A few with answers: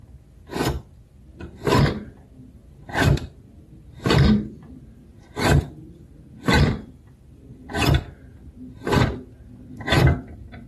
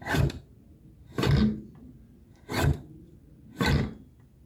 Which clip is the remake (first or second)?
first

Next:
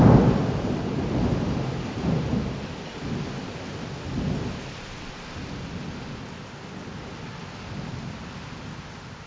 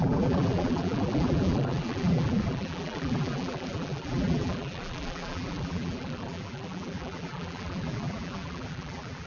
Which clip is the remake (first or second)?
second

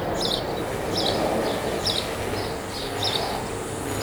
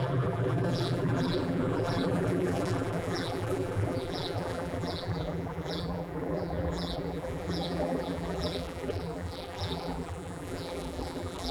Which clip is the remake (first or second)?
second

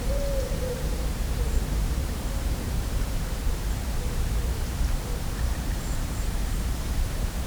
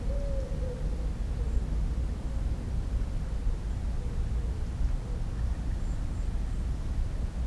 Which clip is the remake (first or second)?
first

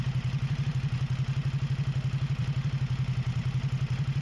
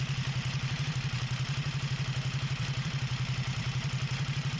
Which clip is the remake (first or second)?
second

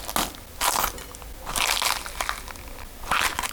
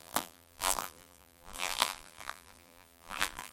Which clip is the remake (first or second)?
second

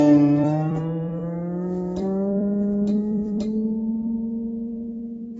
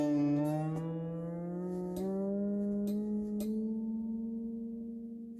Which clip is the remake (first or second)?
first